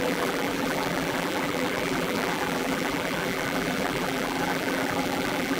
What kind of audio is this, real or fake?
fake